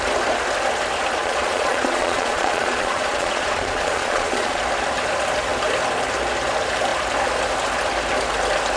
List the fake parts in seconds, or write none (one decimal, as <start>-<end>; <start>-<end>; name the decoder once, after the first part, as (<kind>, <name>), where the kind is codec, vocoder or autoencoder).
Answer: 1.2-4.6 (vocoder, Vocos)

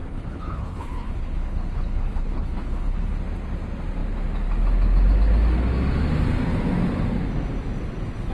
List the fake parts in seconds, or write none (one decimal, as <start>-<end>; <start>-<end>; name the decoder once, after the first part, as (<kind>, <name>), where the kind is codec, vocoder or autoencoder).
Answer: 0.0-3.2 (codec, HILCodec)

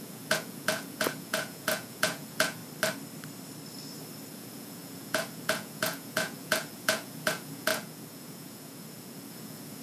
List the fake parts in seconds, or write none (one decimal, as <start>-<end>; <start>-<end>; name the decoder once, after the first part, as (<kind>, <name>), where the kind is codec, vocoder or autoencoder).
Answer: 0.0-2.6 (vocoder, Vocos); 4.3-9.8

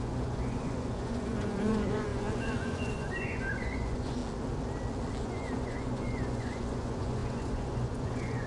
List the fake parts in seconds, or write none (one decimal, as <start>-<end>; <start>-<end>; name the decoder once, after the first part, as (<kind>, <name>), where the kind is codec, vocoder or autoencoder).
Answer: 0.0-4.2 (vocoder, Vocos); 5.2-8.5